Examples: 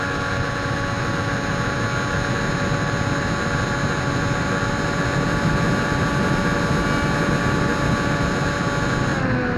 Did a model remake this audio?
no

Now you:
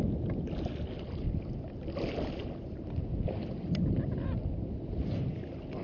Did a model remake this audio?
no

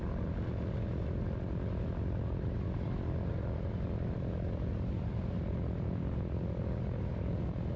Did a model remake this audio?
no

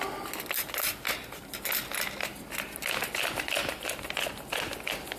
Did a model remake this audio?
no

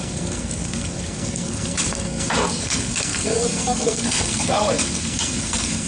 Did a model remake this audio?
yes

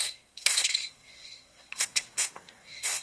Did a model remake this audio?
yes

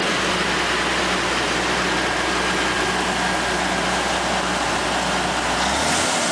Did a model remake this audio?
no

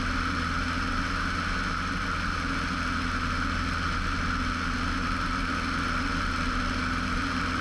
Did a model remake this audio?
no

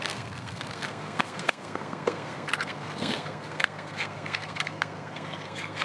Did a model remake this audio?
yes